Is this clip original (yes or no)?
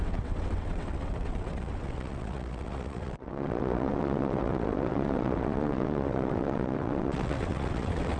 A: no